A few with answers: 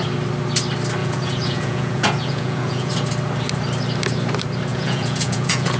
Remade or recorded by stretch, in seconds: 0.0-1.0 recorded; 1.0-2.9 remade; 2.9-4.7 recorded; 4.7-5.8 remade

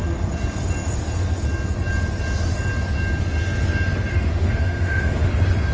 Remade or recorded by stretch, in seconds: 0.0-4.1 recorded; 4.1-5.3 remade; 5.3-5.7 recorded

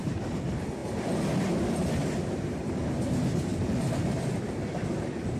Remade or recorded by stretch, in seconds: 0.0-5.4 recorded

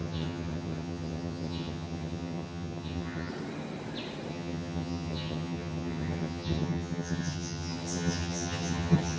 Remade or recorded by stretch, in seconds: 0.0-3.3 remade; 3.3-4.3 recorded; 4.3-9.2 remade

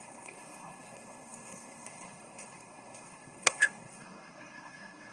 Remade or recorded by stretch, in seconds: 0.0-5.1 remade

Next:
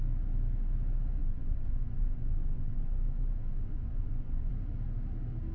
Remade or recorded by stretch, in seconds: 0.0-1.2 recorded; 1.2-4.5 remade; 4.5-5.5 recorded

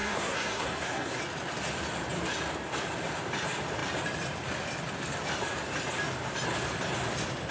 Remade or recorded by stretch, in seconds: 0.0-1.2 remade; 1.2-7.5 recorded

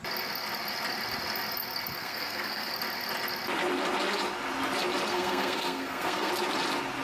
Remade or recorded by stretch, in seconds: 0.0-2.0 recorded; 2.0-2.7 remade; 2.7-5.1 recorded; 5.1-6.3 remade; 6.3-7.0 recorded